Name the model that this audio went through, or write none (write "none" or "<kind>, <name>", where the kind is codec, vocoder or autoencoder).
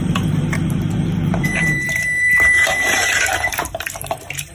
vocoder, BigVGAN v2